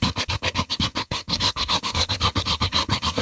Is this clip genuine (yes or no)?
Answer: no